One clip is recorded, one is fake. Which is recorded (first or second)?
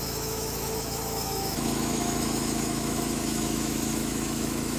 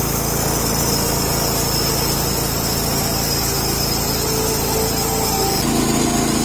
second